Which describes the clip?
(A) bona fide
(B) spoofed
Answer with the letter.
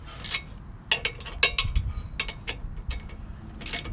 A